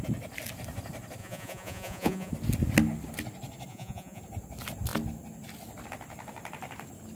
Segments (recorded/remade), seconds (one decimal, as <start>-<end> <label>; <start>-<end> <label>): 0.0-1.2 recorded; 1.2-2.3 remade; 2.3-3.7 recorded; 3.7-4.2 remade; 4.2-7.2 recorded

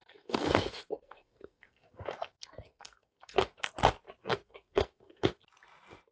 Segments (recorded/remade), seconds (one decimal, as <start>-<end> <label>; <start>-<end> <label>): 0.0-3.7 remade; 3.7-4.2 recorded; 4.2-5.4 remade; 5.4-6.1 recorded

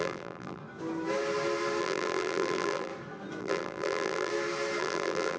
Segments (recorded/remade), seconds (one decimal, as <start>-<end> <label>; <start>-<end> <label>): 0.0-0.6 remade; 0.6-1.8 recorded; 1.8-2.9 remade; 2.9-3.4 recorded; 3.4-4.3 remade; 4.3-4.8 recorded; 4.8-5.4 remade

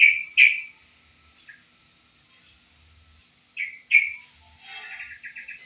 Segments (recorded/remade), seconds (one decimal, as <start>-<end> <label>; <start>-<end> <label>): 0.0-5.7 recorded

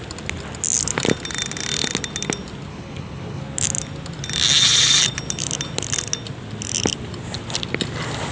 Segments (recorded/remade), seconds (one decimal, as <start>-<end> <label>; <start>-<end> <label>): 0.0-2.7 recorded; 2.7-3.4 remade; 3.4-8.3 recorded

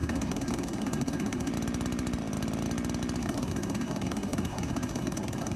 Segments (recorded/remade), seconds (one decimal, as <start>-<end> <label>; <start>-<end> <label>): 0.0-1.5 remade; 1.5-3.2 recorded; 3.2-5.6 remade

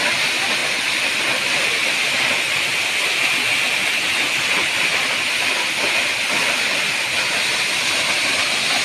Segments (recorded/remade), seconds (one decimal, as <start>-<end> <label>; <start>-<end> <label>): 0.0-8.8 recorded

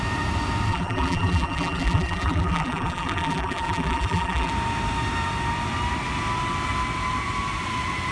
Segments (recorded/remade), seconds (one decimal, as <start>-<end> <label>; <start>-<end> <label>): 0.0-0.7 recorded; 0.7-4.5 remade; 4.5-8.1 recorded